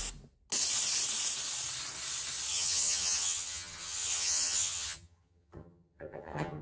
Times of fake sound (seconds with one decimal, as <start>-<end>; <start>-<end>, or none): 2.5-6.6

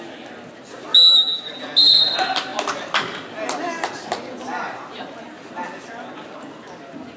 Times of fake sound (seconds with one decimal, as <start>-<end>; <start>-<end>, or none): 0.9-1.5

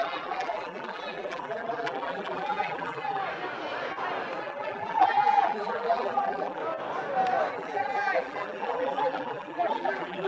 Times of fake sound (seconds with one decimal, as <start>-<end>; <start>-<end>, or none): 0.0-3.2; 4.4-6.6; 7.5-10.3

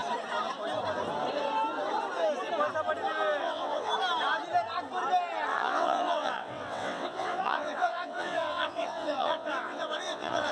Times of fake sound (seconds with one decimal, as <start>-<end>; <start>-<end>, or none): 3.4-3.9; 5.5-10.5